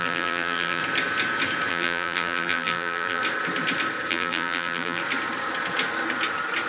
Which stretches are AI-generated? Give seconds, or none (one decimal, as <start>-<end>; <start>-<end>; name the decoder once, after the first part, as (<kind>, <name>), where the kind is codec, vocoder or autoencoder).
0.0-0.8 (vocoder, BigVGAN v2); 1.7-3.2; 4.1-5.0